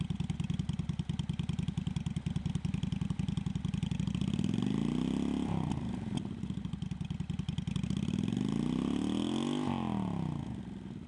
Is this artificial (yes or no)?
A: no